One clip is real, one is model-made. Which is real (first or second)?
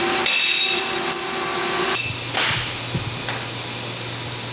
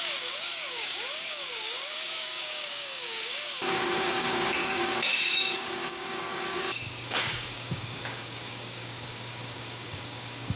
first